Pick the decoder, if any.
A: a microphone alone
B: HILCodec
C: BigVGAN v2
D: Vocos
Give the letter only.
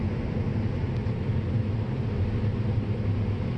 A